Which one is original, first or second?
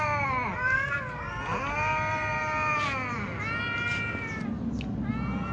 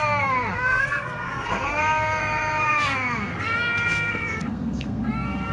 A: first